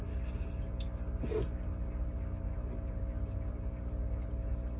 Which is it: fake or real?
real